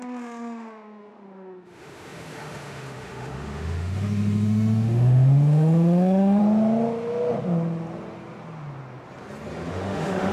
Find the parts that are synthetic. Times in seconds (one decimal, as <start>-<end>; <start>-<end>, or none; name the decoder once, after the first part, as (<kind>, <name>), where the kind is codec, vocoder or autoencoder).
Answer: 0.0-6.4 (autoencoder, DAC-VAE); 9.7-10.3